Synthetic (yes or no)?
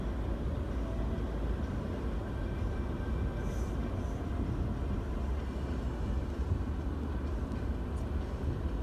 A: no